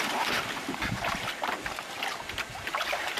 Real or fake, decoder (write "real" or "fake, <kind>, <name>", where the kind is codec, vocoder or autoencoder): real